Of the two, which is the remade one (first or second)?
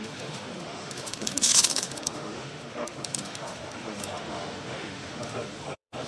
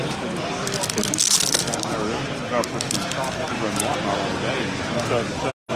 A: first